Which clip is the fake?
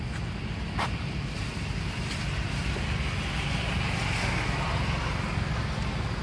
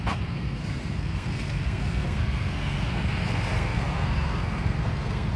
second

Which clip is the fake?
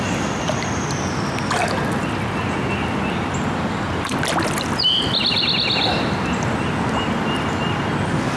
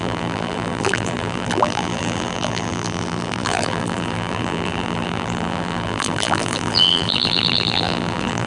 second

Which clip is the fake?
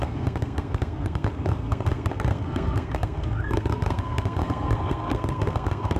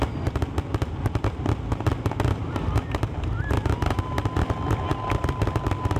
first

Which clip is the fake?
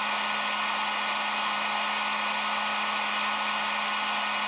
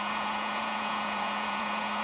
second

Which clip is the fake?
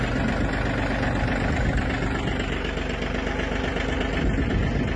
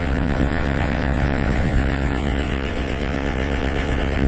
second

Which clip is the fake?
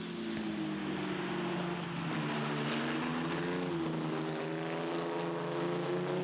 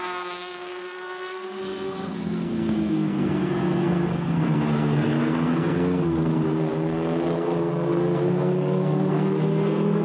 second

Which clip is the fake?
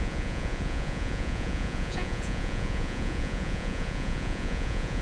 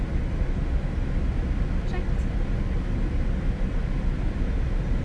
first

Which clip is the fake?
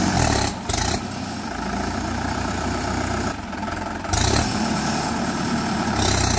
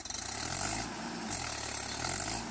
first